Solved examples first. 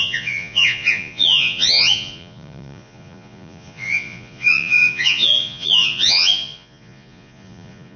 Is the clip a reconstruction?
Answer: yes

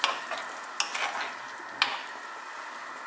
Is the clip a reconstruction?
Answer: no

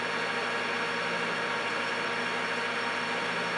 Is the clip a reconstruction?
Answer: no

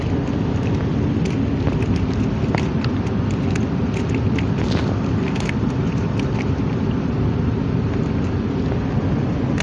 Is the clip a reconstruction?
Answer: no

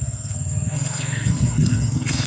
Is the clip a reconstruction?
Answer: yes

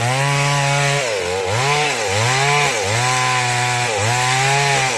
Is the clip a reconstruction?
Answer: no